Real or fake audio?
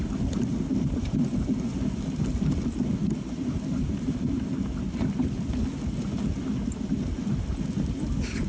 real